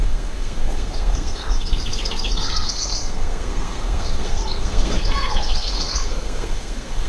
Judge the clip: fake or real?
fake